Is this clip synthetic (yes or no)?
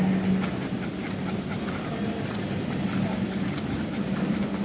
no